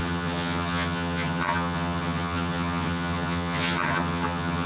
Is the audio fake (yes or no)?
yes